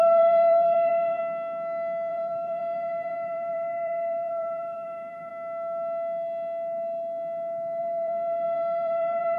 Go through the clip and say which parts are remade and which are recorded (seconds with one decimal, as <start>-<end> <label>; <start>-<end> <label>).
0.0-1.2 remade; 1.2-2.1 recorded; 2.1-5.3 remade; 5.3-7.8 recorded; 7.8-9.4 remade